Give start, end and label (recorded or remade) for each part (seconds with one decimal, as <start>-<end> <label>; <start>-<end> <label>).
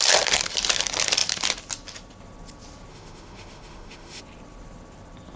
0.0-2.9 recorded; 2.9-4.2 remade; 4.2-5.4 recorded